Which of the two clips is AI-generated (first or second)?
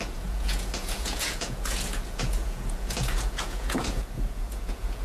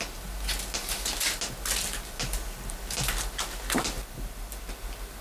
first